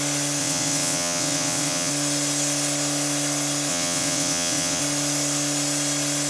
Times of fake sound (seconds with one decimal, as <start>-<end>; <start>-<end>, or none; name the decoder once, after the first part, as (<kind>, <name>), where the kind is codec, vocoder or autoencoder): 0.4-1.9 (vocoder, WaveNeXt); 3.7-4.8